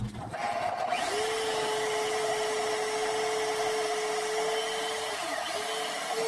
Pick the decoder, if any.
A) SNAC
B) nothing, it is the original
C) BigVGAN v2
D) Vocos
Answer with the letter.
B